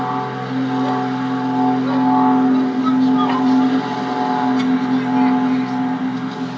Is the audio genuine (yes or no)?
yes